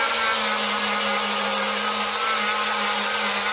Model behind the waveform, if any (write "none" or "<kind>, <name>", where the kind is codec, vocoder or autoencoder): none